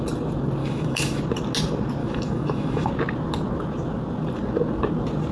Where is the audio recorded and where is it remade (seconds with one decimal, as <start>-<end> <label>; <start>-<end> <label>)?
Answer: 0.0-0.6 recorded; 0.6-1.2 remade; 1.2-2.0 recorded; 2.0-2.9 remade; 2.9-5.3 recorded